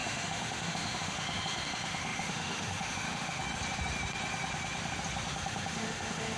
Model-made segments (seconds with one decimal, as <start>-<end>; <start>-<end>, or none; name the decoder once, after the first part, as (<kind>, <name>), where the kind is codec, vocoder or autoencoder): 0.0-3.4 (autoencoder, DAC-VAE); 5.3-6.4